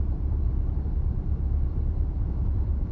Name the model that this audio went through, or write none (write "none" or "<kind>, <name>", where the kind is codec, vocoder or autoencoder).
vocoder, BigVGAN v2